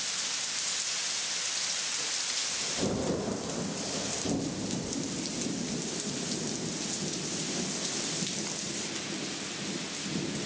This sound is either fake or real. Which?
real